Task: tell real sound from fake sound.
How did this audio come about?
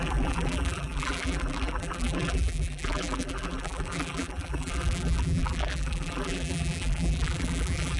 fake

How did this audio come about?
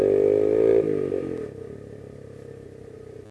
real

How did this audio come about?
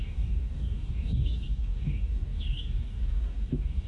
fake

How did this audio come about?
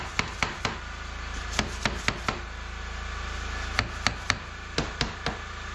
real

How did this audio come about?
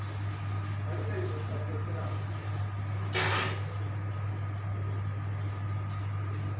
real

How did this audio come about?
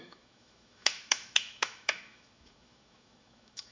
fake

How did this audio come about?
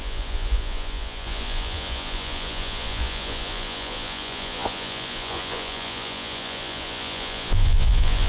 fake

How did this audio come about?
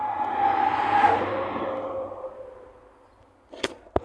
real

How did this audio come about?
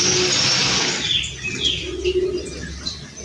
real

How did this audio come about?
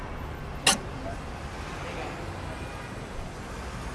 real